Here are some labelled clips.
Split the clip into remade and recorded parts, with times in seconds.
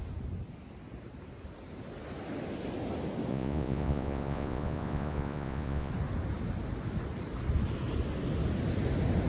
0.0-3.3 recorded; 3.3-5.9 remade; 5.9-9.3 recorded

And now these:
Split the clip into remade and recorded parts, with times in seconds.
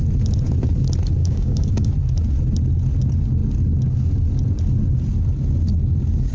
0.0-1.2 recorded; 1.2-1.9 remade; 1.9-6.3 recorded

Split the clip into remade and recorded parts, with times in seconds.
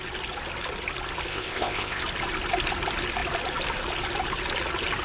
0.0-1.3 recorded; 1.3-2.0 remade; 2.0-5.0 recorded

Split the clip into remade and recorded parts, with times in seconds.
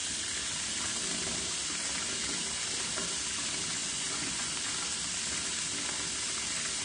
0.0-3.8 recorded; 3.8-4.5 remade; 4.5-6.8 recorded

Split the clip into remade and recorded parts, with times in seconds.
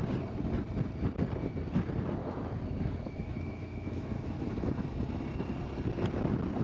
0.0-2.2 recorded; 2.2-4.5 remade; 4.5-6.6 recorded